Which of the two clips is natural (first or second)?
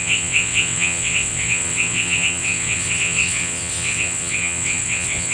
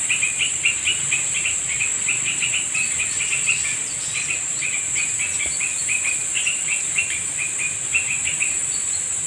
second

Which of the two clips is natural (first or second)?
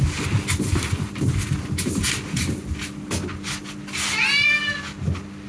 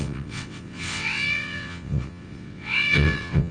first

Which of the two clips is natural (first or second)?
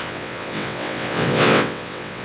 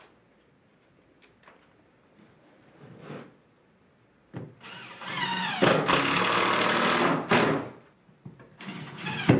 second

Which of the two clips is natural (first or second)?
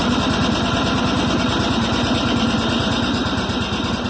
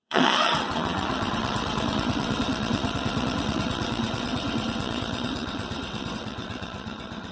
first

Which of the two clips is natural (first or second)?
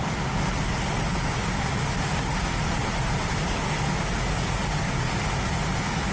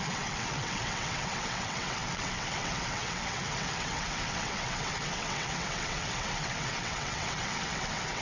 first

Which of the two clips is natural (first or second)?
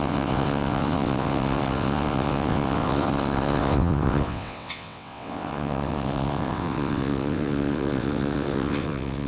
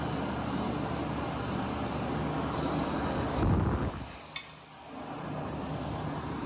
second